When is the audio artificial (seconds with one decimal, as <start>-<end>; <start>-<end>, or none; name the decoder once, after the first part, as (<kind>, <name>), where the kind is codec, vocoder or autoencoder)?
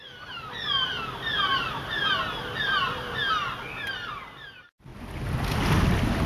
none